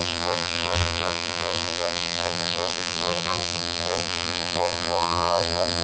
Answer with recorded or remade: remade